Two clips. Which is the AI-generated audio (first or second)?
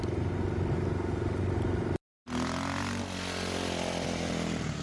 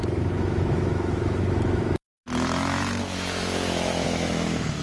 second